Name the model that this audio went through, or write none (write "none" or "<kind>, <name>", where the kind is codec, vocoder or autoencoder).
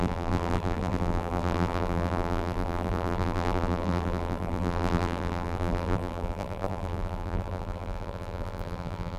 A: vocoder, BigVGAN v2